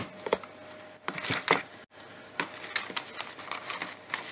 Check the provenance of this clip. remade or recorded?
recorded